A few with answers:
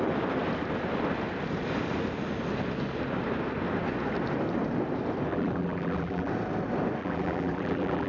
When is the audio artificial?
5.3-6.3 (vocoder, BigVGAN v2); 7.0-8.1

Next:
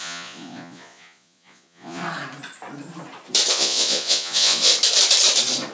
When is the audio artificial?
0.0-2.0 (vocoder, Vocos); 3.5-4.7

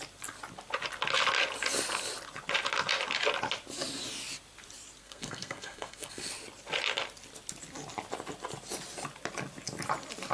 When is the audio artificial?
5.0-6.3 (codec, SNAC)

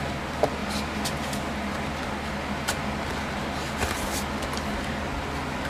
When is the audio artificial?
none

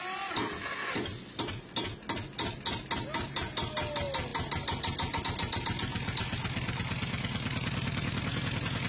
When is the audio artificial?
none

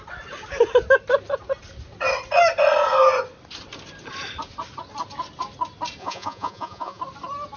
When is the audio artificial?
6.0-7.0 (vocoder, Vocos)